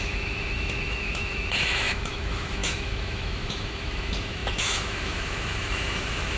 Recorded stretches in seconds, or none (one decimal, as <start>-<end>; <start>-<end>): none

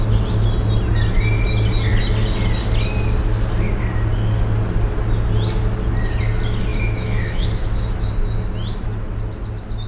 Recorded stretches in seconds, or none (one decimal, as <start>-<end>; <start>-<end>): 0.0-6.7; 8.1-9.9